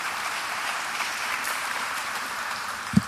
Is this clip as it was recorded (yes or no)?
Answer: no